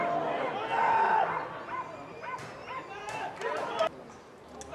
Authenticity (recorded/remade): recorded